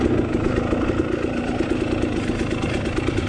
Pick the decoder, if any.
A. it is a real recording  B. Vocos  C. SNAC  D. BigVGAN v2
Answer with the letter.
A